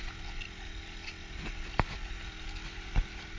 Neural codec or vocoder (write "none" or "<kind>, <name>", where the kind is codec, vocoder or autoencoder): none